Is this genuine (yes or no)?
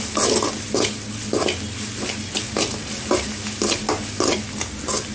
yes